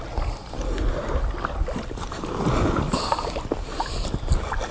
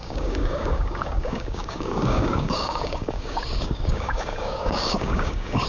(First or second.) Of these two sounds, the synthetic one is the second